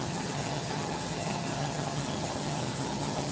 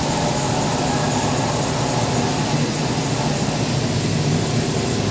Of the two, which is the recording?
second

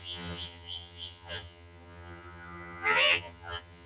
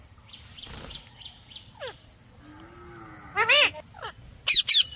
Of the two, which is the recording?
second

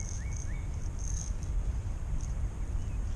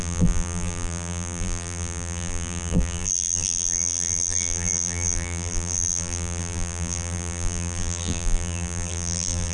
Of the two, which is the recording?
first